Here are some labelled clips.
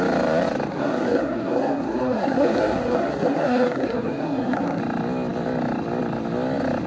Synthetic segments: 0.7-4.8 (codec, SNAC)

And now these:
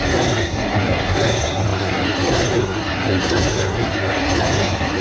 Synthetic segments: 0.0-5.0 (codec, SNAC)

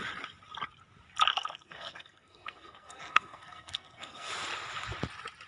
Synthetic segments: 1.3-4.3 (codec, SNAC)

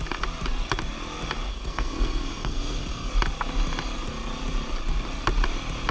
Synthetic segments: 1.5-3.1 (codec, SNAC)

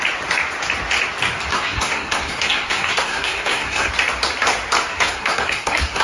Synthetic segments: 1.5-3.9 (codec, SNAC); 4.9-6.0

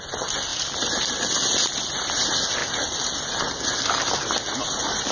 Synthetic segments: none

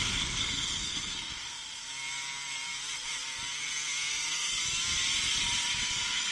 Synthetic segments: 0.0-1.3 (codec, SNAC); 4.1-4.6; 5.8-6.3

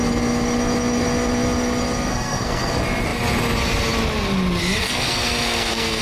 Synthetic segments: 2.1-2.7 (codec, SNAC); 4.8-6.0